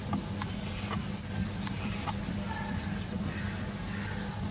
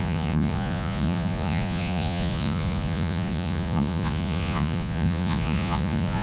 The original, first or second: first